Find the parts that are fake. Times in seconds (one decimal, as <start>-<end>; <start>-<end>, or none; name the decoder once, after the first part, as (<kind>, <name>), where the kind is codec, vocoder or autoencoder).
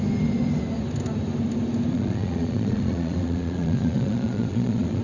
1.9-5.0 (vocoder, Vocos)